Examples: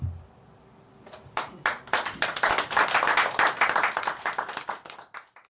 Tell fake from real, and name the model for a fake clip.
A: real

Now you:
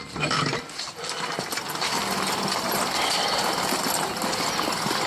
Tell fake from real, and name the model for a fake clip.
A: real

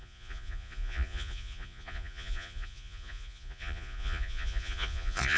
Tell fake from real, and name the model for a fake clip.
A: fake, vocoder, Vocos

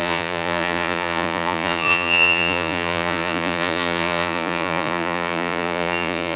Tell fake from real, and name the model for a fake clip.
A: fake, vocoder, Vocos